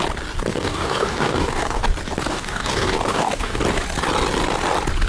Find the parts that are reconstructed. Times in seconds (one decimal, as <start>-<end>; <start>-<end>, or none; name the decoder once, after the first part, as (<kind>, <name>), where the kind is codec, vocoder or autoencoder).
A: 0.5-1.8 (codec, DAC); 2.3-3.6